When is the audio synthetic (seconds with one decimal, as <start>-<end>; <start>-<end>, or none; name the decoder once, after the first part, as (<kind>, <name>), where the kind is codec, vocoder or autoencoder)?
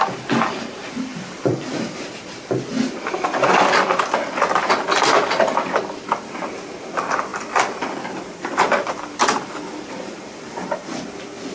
1.1-2.4 (vocoder, BigVGAN v2); 7.3-10.6